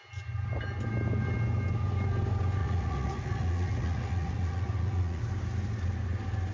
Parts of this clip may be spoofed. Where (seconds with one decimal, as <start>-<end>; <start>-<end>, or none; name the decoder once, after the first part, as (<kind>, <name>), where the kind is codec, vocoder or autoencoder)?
2.6-5.2 (vocoder, Vocos)